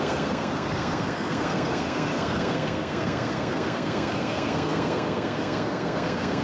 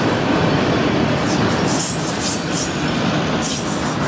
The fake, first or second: first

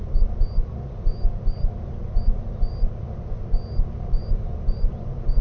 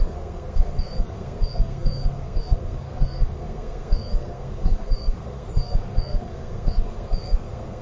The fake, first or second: second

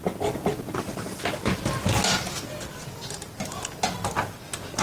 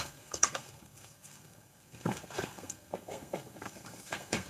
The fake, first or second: second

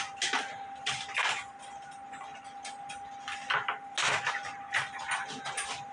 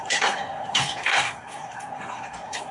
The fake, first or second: second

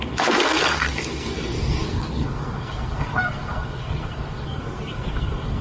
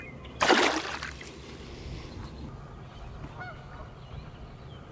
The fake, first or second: first